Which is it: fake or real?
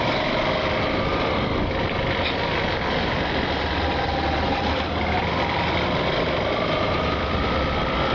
real